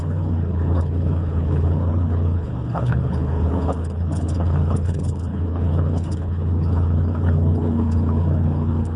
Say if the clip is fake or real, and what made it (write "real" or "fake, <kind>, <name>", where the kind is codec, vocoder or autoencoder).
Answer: fake, codec, HILCodec